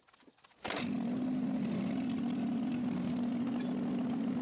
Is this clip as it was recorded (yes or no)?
yes